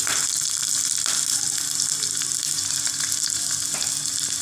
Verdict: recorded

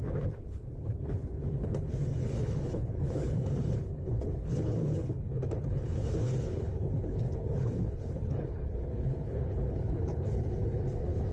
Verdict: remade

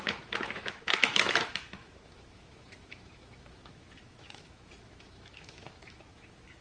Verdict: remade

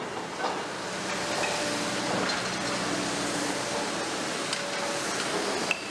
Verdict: recorded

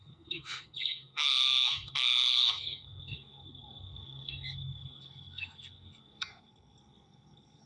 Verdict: remade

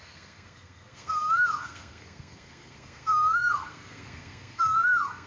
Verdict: remade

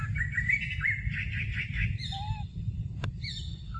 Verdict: recorded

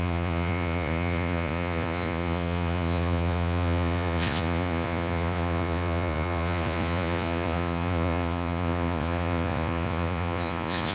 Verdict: remade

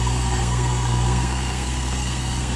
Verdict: remade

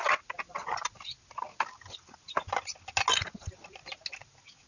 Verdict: recorded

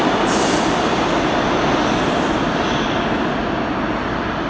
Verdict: recorded